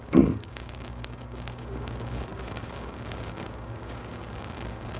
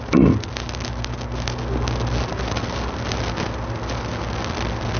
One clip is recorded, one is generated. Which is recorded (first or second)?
second